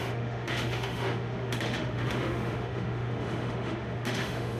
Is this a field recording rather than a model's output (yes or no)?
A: no